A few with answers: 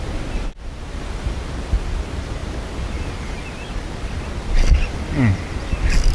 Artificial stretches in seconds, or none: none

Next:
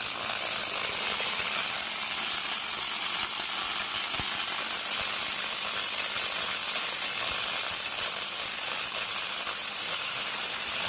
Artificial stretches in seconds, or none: none

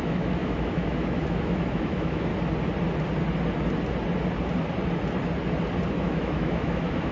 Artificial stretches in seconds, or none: 0.0-2.3; 5.9-7.1

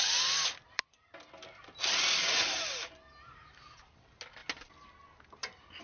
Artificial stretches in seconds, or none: none